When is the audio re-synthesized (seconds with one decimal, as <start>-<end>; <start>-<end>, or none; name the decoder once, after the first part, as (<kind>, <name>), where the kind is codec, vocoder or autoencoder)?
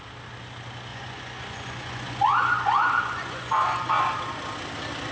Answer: 0.9-4.0 (vocoder, Vocos)